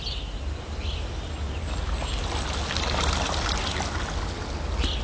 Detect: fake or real real